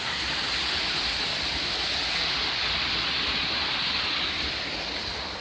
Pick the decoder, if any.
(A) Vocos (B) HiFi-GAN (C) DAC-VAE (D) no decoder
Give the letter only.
D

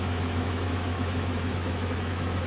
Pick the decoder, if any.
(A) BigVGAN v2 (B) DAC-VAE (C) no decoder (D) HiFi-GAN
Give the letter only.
B